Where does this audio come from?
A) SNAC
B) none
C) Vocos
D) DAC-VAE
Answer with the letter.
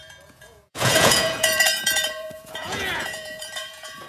C